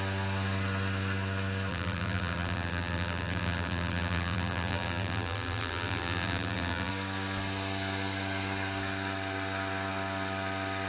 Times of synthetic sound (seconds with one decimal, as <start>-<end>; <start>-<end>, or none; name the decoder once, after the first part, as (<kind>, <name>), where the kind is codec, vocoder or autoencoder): 1.7-6.9 (vocoder, BigVGAN v2)